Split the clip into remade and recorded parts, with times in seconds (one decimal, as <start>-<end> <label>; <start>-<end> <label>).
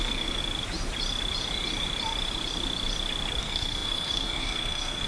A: 0.0-0.4 remade; 0.4-3.4 recorded; 3.4-5.1 remade